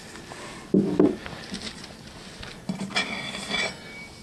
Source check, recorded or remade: recorded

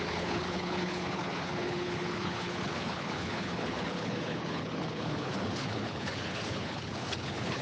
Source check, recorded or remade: remade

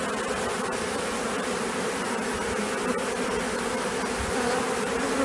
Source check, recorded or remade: recorded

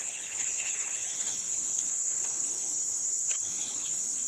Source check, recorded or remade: remade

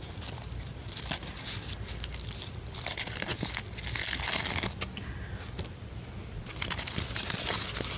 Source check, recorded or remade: recorded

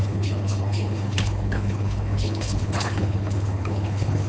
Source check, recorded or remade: remade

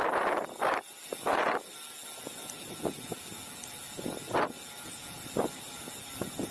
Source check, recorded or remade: recorded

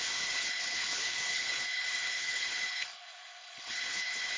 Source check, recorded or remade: remade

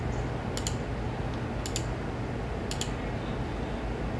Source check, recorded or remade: recorded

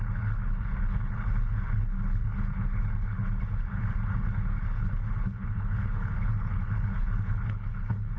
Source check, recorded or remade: remade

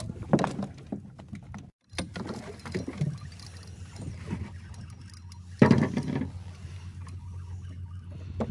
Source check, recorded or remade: recorded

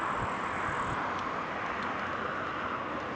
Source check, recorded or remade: recorded